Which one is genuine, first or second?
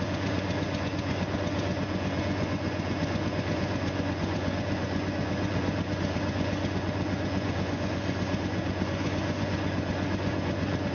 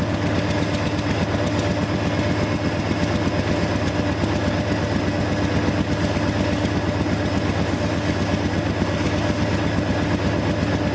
second